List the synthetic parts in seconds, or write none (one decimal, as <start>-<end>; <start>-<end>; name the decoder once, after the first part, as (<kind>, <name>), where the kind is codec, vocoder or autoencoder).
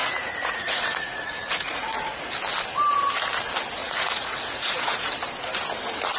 0.0-2.3 (vocoder, Vocos); 3.8-5.1